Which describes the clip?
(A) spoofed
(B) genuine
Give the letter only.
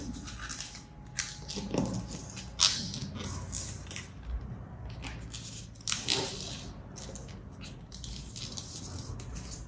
B